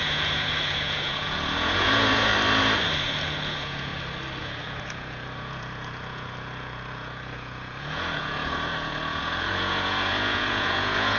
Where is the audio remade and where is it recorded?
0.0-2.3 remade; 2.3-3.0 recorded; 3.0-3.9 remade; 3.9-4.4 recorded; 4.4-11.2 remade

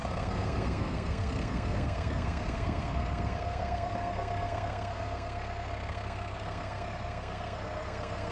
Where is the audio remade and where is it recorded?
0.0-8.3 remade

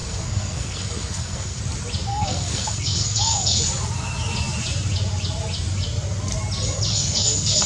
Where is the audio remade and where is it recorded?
0.0-1.6 remade; 1.6-2.1 recorded; 2.1-3.7 remade; 3.7-6.9 recorded; 6.9-7.7 remade